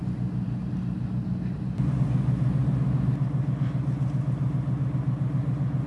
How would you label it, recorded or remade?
recorded